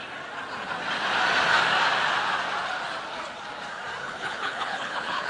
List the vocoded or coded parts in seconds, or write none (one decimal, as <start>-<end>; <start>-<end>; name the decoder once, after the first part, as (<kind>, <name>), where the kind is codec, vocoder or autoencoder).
4.0-5.3 (codec, HILCodec)